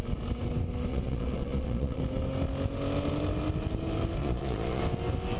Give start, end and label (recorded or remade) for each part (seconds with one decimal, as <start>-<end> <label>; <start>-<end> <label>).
0.0-0.9 recorded; 0.9-2.0 remade; 2.0-4.2 recorded; 4.2-4.8 remade; 4.8-5.4 recorded